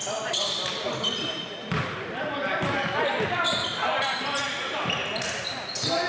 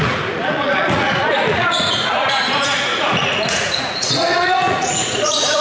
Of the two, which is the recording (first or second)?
first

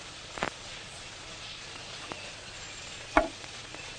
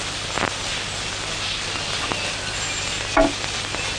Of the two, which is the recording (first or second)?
second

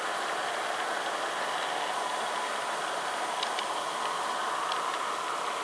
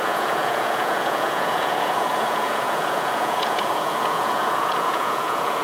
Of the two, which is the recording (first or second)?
first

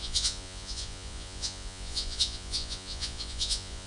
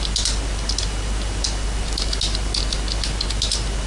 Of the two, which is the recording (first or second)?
second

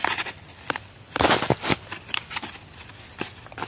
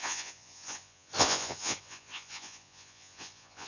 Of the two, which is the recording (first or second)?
first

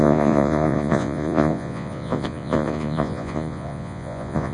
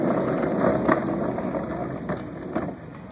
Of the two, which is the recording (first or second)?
second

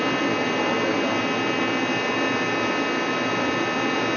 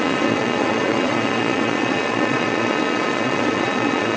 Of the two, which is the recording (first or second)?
first